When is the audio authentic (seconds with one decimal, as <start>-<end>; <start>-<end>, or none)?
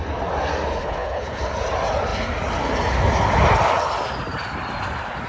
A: 0.0-0.8; 1.4-5.3